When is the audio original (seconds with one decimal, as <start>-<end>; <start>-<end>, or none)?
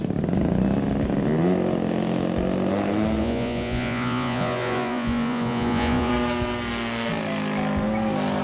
0.0-3.2; 6.1-8.4